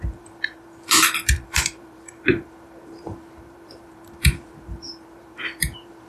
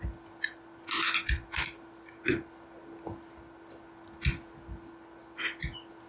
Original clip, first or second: second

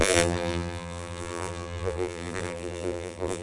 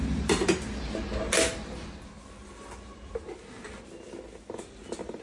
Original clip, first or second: second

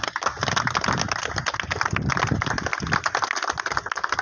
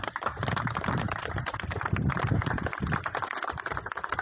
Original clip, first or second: first